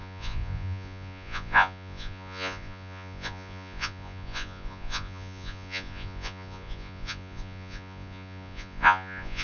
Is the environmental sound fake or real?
fake